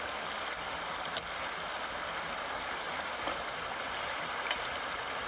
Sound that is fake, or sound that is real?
real